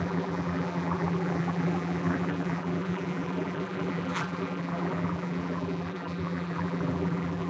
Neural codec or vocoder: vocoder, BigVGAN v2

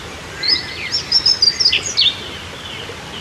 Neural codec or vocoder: none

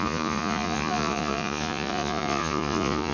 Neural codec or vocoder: vocoder, Vocos